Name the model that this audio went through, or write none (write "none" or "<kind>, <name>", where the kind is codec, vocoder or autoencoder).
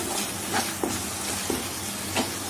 none